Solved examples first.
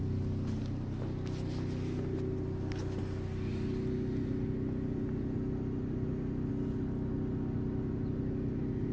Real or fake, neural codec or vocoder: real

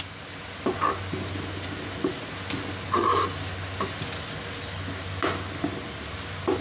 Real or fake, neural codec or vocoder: real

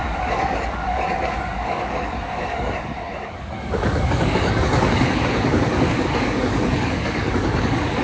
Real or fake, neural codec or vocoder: fake, codec, DAC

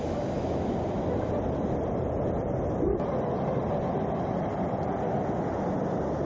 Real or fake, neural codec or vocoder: real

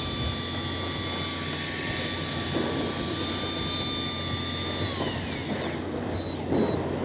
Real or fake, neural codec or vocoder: real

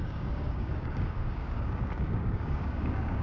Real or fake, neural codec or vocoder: fake, codec, DAC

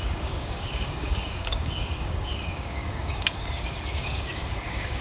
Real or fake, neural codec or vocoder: fake, codec, DAC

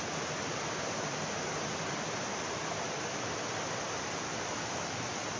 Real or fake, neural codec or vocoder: real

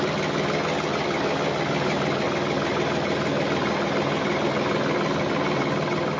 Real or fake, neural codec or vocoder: real